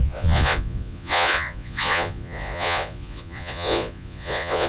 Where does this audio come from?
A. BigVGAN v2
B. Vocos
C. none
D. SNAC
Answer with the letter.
B